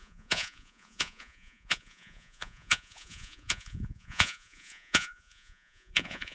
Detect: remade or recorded remade